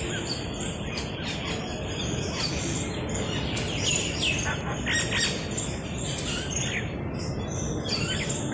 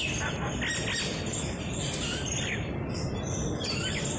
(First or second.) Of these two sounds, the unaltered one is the first